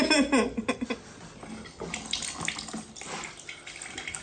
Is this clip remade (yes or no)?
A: no